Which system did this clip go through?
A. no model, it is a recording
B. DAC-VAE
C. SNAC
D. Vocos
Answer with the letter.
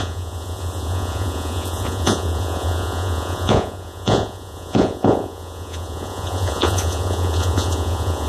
D